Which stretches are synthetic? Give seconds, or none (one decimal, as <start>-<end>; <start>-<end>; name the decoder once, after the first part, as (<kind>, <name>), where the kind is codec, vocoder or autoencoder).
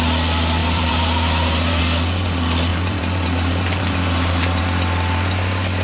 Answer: 0.6-1.8 (vocoder, BigVGAN v2); 2.7-4.6